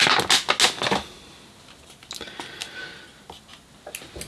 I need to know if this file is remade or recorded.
recorded